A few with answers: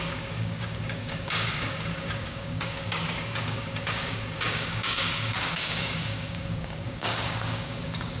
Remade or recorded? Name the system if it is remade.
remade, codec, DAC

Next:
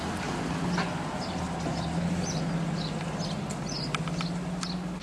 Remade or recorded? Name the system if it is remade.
recorded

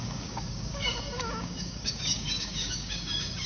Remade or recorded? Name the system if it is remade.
remade, codec, DAC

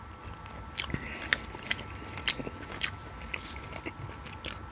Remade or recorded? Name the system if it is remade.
recorded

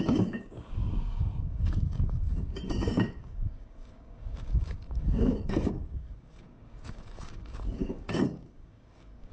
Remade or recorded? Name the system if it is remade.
remade, codec, DAC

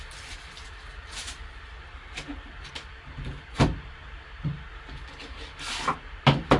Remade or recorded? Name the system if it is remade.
recorded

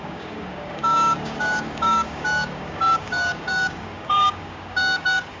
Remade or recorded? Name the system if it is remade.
remade, codec, DAC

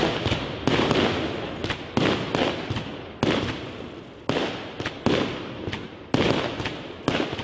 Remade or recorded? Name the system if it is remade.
recorded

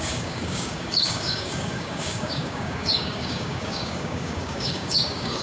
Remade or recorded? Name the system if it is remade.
remade, codec, DAC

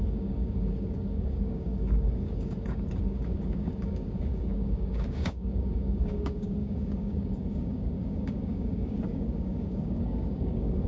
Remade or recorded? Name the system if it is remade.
remade, codec, DAC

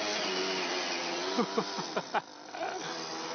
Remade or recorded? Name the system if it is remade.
recorded